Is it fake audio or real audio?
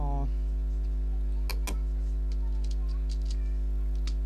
real